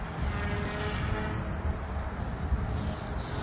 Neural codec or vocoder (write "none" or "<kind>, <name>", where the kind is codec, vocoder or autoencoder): none